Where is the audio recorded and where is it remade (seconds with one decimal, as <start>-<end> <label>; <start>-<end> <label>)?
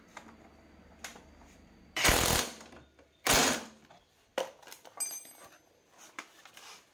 0.0-1.1 recorded; 1.1-4.6 remade; 4.6-6.9 recorded